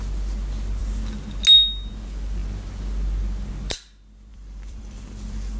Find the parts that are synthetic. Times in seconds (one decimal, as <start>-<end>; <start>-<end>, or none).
4.3-5.6